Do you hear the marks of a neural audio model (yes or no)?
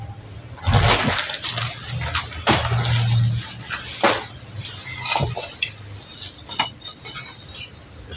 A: no